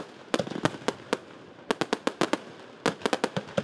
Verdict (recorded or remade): recorded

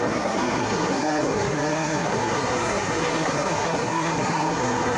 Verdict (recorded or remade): remade